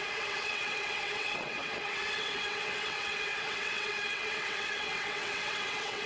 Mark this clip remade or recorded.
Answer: remade